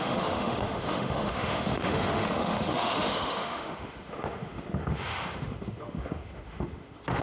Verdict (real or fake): fake